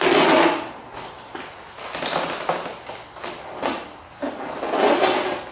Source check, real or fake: real